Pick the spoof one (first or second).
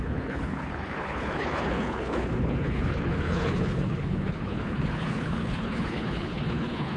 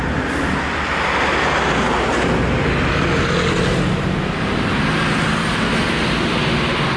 first